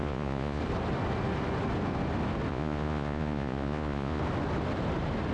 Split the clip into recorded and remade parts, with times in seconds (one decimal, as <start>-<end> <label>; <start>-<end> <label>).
0.0-0.6 remade; 0.6-2.5 recorded; 2.5-4.2 remade; 4.2-5.3 recorded